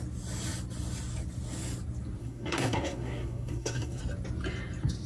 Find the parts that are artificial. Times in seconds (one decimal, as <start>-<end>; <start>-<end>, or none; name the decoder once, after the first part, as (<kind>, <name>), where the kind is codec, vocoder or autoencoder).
2.2-4.0 (codec, SNAC)